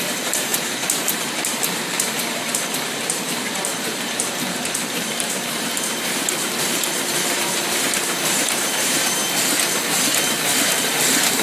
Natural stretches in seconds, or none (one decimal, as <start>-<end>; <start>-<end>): 9.2-10.6